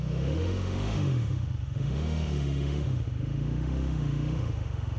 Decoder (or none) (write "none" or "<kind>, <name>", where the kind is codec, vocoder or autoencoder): autoencoder, DAC-VAE